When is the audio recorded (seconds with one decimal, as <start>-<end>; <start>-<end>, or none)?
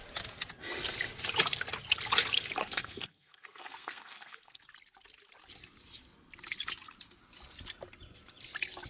0.0-2.6; 4.6-8.9